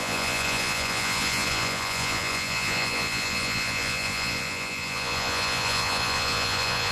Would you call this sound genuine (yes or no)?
no